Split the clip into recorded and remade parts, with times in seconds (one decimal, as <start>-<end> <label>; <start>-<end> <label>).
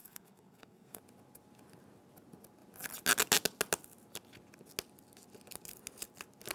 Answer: 0.0-1.0 remade; 1.0-6.5 recorded